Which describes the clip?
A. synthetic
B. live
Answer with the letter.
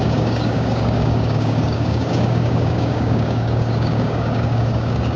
A